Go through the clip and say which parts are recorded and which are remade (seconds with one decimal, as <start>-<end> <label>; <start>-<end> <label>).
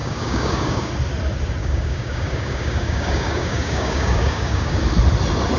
0.0-0.9 remade; 0.9-1.6 recorded; 1.6-4.8 remade; 4.8-5.6 recorded